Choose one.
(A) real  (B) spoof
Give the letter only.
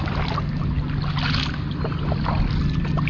A